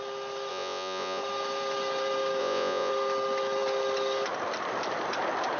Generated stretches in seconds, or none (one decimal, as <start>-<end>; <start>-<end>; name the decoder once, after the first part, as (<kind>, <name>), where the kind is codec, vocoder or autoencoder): 0.5-1.2 (vocoder, Vocos); 2.4-2.9